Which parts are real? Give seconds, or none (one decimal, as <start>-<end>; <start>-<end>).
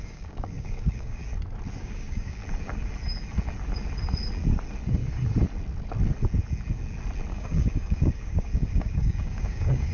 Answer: 1.2-1.8; 2.4-7.3